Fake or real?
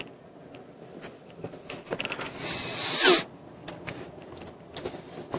real